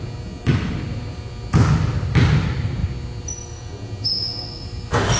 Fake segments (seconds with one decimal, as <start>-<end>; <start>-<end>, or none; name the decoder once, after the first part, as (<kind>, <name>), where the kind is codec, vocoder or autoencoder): none